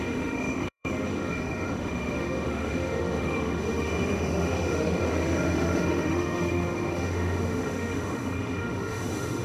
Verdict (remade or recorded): remade